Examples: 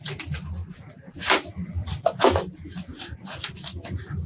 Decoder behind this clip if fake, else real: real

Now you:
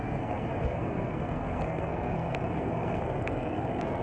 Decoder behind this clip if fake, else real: fake, codec, SNAC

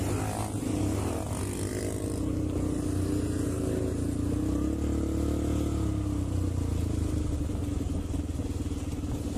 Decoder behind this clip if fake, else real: real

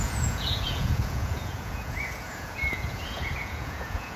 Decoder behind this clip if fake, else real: fake, vocoder, Vocos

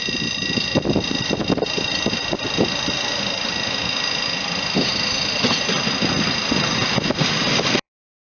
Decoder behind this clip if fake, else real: real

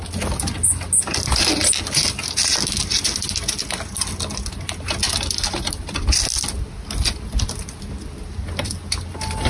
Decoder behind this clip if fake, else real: real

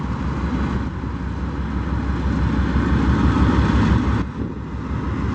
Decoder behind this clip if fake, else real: real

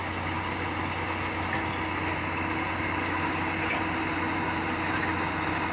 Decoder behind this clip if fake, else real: real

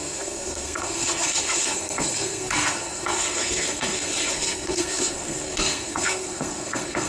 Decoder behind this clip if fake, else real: fake, codec, SNAC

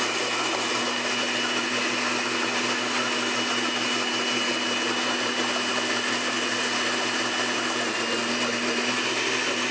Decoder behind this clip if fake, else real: real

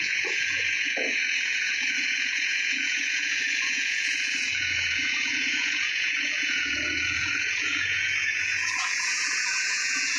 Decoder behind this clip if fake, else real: fake, vocoder, Vocos